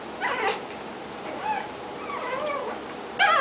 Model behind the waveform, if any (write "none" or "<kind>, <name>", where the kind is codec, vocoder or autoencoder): none